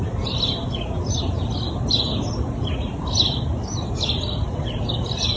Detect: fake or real real